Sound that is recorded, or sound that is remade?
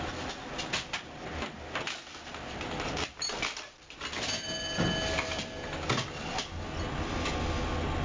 recorded